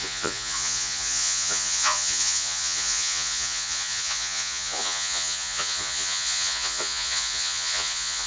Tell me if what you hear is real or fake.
fake